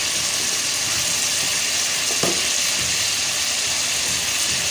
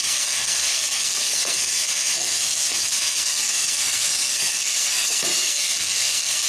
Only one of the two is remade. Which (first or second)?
second